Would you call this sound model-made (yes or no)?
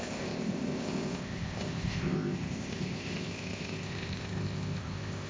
yes